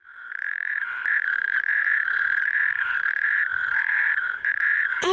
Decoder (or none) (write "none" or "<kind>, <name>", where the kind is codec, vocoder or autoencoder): vocoder, Vocos